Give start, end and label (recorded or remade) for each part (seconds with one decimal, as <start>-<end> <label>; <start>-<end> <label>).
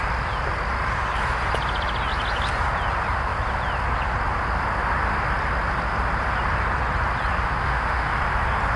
0.0-7.6 recorded; 7.6-8.1 remade; 8.1-8.8 recorded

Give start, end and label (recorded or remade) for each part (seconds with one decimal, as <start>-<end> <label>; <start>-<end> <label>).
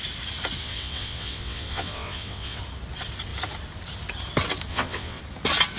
0.0-0.6 recorded; 0.6-2.6 remade; 2.6-4.7 recorded; 4.7-5.2 remade; 5.2-5.8 recorded